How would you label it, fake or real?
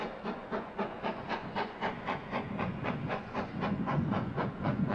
fake